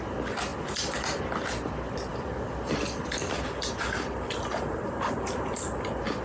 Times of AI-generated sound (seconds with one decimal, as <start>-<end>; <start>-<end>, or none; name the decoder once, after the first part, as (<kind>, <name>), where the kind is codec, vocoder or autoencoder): 0.5-1.2 (vocoder, BigVGAN v2); 2.1-5.5